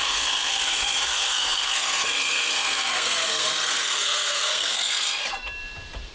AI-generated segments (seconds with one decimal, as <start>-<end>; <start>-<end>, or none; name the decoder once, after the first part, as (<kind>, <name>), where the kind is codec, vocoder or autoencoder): 0.0-5.2 (codec, SNAC)